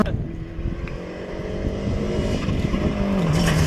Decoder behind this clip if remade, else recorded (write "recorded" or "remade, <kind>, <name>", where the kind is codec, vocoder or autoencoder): recorded